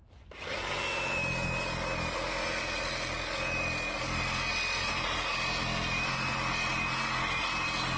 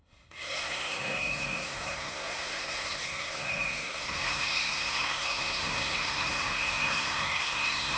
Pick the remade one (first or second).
second